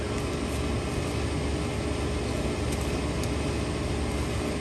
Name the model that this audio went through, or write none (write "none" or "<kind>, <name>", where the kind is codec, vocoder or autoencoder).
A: none